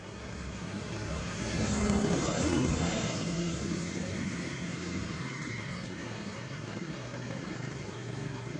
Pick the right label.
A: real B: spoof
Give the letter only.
B